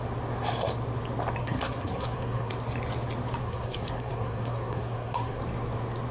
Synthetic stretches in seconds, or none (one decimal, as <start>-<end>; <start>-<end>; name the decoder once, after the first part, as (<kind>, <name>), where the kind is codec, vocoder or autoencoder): 1.4-2.5 (codec, SNAC); 3.4-5.4